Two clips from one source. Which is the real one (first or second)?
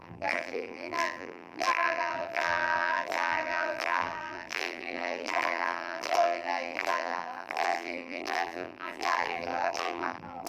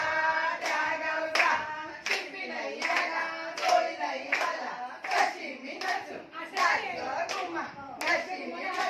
second